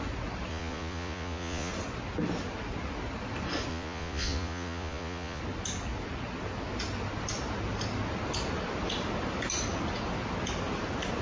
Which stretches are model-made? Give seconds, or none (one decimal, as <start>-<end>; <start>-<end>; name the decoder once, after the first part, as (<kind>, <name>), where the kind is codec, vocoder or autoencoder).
0.5-1.7 (vocoder, Vocos); 3.7-5.4